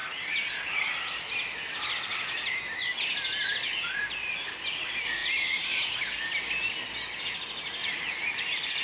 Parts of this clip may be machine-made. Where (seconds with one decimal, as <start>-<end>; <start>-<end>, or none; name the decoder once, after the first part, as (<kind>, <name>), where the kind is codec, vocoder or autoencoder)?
0.0-0.9 (vocoder, Vocos); 5.2-6.0; 7.8-8.4